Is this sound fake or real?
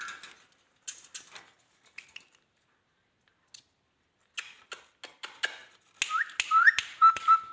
real